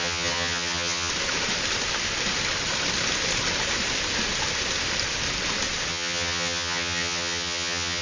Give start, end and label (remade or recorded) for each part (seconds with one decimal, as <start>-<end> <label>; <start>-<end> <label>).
0.0-1.1 remade; 1.1-5.9 recorded; 5.9-8.0 remade